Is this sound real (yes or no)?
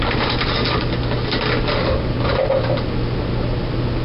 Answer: yes